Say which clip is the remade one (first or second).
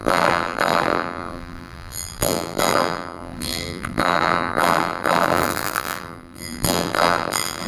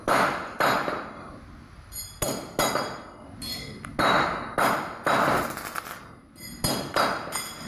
first